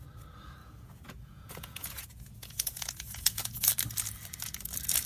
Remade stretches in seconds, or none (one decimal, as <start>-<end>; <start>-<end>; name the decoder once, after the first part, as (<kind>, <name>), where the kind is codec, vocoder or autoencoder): 0.6-3.7 (vocoder, Vocos)